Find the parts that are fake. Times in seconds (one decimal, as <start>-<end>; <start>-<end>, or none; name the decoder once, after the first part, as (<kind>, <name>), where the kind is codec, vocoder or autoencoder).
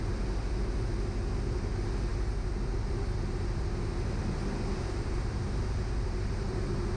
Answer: none